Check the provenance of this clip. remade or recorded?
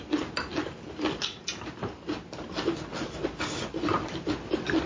recorded